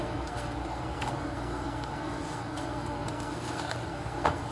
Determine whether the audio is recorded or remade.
remade